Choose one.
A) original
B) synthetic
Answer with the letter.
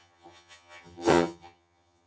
B